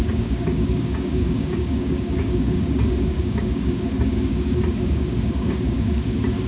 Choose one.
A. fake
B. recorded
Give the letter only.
A